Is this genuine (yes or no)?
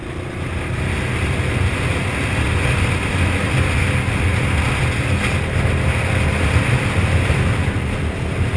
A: yes